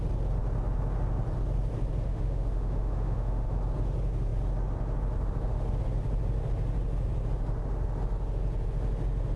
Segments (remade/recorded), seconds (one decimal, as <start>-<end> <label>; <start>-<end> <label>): 0.0-2.1 recorded; 2.1-3.6 remade; 3.6-9.4 recorded